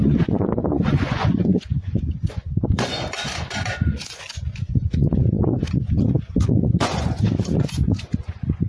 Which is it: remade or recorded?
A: remade